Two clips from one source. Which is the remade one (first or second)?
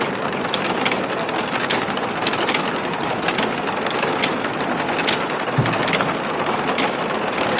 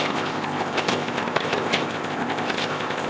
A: second